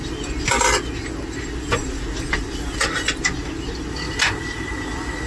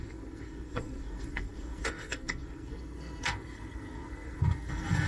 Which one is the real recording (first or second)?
first